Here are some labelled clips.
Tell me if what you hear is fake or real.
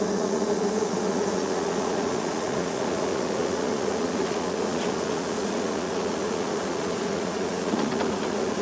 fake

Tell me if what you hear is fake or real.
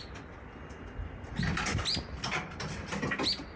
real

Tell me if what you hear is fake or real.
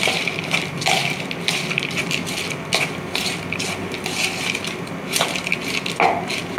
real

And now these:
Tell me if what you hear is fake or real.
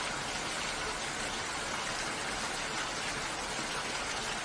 real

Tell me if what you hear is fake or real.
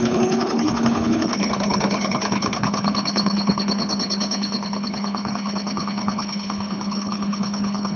fake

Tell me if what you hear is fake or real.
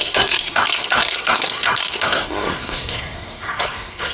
fake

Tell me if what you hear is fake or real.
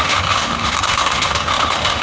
fake